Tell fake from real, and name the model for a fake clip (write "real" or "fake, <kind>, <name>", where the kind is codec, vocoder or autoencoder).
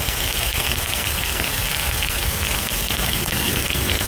fake, codec, SNAC